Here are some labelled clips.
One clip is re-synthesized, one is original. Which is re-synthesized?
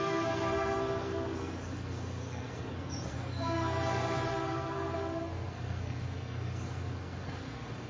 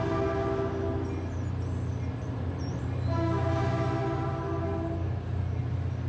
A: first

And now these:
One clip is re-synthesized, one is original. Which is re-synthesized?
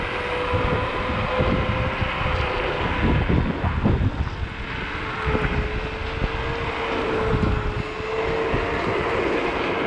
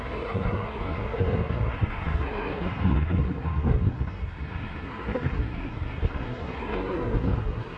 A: second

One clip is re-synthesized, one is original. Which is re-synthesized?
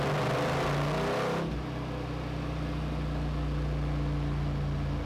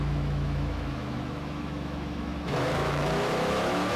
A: second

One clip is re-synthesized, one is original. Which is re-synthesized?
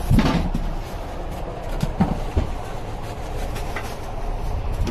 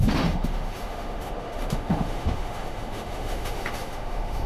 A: second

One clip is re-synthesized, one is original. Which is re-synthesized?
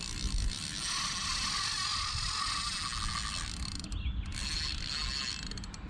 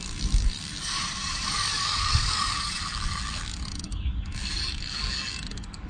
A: second